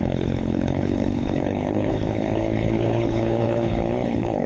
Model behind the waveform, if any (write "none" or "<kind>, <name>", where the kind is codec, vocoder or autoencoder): codec, HILCodec